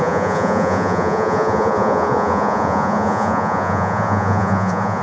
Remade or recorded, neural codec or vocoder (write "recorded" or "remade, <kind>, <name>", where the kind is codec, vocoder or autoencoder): remade, vocoder, Vocos